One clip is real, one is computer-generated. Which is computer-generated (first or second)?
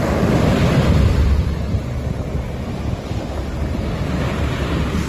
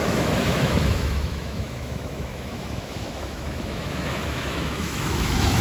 second